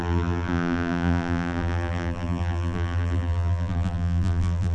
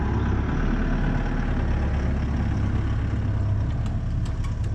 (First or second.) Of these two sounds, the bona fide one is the second